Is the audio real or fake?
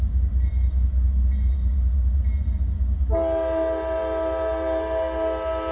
real